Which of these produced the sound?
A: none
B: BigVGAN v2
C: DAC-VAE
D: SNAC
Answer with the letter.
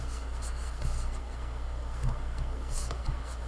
D